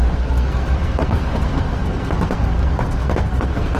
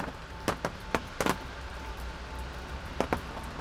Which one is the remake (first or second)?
first